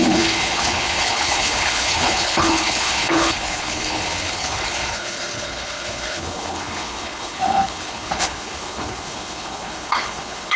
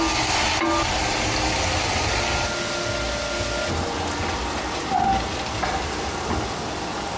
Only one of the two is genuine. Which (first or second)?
second